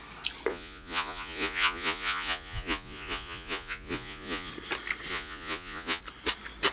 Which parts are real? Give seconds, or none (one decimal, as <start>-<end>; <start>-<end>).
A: 0.0-0.5; 4.5-5.1; 6.0-6.7